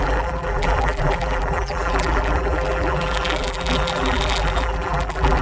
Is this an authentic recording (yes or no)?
no